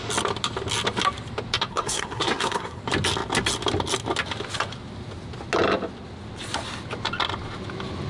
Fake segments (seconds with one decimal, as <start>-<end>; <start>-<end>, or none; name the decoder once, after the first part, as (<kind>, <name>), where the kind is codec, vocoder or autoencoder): 1.7-2.8 (codec, SNAC)